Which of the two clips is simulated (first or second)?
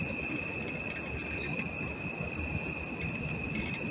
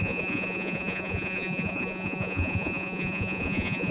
second